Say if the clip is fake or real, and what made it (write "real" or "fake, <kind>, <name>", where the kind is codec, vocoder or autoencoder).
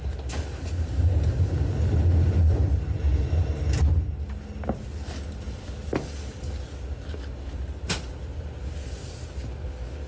real